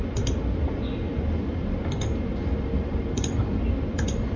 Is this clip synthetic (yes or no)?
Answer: no